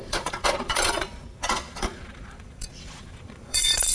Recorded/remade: remade